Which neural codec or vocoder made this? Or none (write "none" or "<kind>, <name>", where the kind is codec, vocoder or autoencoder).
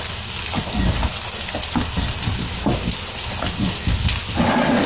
none